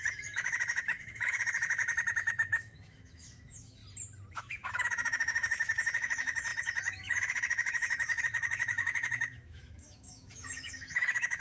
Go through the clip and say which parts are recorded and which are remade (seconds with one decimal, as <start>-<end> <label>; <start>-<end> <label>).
0.0-3.8 remade; 3.8-4.3 recorded; 4.3-11.4 remade